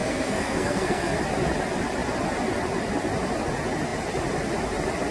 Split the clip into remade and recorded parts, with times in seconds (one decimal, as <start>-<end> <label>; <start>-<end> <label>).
0.0-1.2 remade; 1.2-5.1 recorded